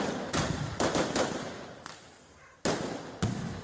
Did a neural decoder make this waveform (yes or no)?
no